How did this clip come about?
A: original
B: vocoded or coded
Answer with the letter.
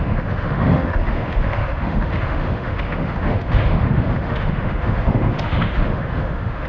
B